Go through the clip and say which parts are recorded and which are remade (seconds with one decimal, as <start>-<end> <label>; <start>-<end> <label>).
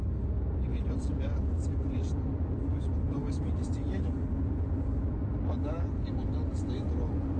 0.0-7.4 recorded